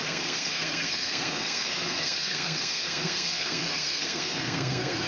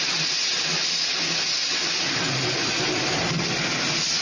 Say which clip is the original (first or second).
second